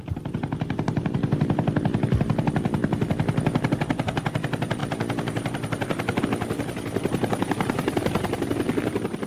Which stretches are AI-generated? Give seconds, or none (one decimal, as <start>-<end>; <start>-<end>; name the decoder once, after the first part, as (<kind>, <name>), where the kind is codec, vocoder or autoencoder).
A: 0.0-9.3 (vocoder, BigVGAN v2)